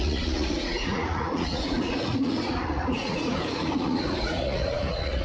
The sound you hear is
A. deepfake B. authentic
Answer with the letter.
A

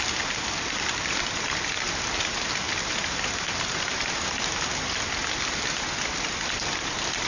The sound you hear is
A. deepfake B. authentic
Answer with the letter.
B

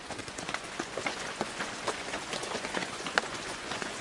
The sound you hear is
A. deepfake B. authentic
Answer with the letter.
A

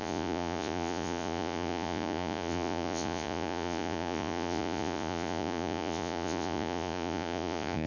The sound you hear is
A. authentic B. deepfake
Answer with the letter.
B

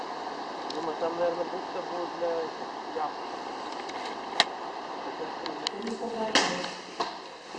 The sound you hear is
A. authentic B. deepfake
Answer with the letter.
A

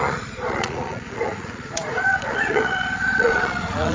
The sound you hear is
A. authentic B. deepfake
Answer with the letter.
B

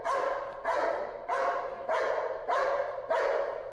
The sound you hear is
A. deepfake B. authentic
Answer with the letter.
B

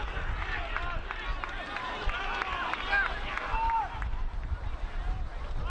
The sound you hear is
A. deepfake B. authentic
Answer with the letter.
B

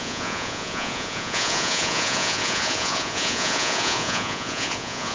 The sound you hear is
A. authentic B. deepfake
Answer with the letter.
B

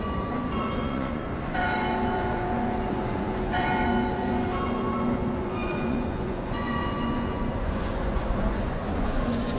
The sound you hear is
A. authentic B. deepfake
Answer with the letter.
B